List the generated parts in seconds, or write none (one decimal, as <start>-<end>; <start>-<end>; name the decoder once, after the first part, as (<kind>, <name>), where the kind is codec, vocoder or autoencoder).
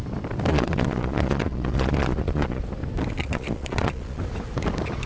0.5-2.6 (vocoder, Vocos); 3.2-4.2